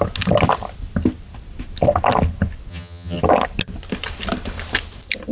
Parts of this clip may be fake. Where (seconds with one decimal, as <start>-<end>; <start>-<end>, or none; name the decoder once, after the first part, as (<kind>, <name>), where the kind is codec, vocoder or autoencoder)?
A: 2.7-3.2 (vocoder, HiFi-GAN)